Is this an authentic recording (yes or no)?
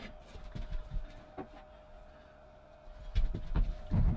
yes